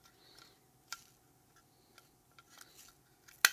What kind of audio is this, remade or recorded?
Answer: recorded